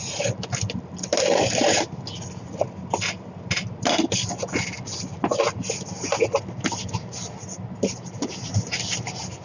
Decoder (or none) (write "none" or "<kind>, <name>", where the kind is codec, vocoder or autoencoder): none